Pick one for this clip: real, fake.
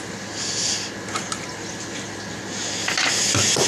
real